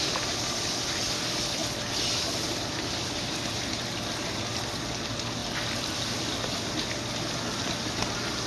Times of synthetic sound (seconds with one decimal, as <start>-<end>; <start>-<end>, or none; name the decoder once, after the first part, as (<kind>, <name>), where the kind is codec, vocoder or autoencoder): none